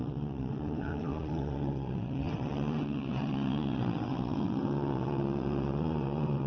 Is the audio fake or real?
fake